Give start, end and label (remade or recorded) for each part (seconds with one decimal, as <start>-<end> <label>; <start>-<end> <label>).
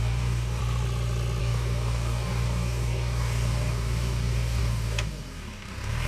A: 0.0-0.6 remade; 0.6-1.4 recorded; 1.4-6.1 remade